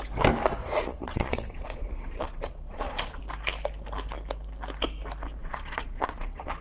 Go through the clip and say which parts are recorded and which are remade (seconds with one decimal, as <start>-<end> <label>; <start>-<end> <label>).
0.0-0.6 recorded; 0.6-3.2 remade; 3.2-5.4 recorded; 5.4-6.6 remade